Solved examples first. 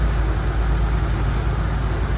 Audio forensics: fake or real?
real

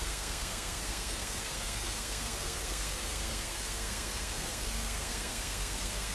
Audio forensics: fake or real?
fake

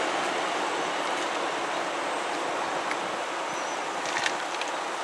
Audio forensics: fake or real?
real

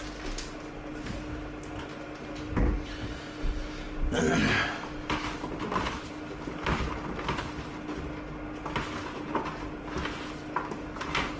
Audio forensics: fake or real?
real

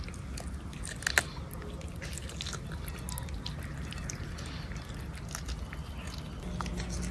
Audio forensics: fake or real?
real